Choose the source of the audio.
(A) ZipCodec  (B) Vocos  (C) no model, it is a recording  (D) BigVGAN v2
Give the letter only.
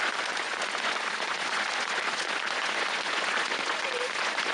B